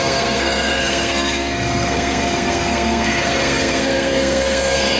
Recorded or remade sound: remade